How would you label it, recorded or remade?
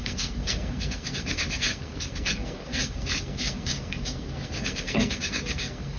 remade